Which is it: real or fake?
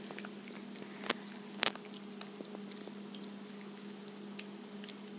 real